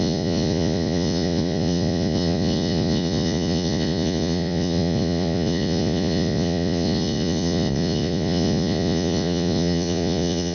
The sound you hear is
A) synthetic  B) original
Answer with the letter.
A